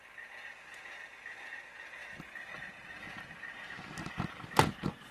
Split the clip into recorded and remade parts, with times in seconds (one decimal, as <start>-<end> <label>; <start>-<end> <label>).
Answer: 0.0-5.1 recorded